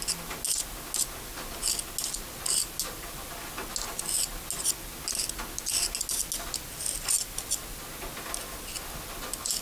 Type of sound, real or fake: real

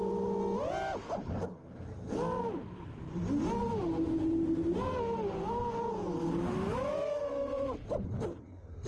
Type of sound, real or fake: real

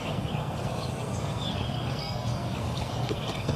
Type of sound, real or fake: fake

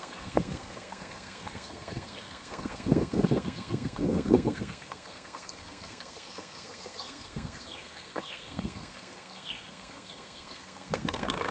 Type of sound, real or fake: fake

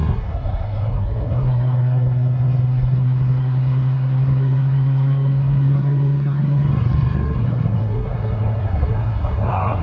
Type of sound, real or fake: fake